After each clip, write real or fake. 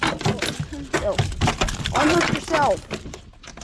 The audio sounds real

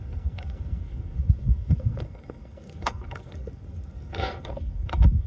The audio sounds fake